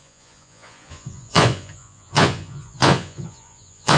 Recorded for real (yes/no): no